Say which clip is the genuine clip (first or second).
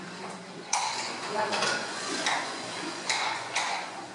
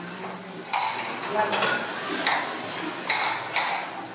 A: second